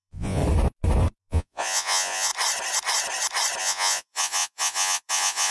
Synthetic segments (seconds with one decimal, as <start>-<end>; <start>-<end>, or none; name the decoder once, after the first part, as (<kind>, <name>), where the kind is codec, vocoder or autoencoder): 0.0-0.4 (vocoder, Vocos); 1.2-2.3; 3.6-5.5